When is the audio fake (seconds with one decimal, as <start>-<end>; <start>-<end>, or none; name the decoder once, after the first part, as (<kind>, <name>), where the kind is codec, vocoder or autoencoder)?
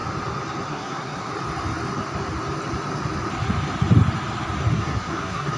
0.7-1.3 (codec, SNAC); 4.7-5.6